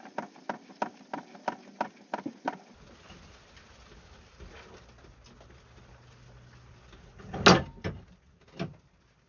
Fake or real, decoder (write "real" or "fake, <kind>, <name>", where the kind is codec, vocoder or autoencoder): real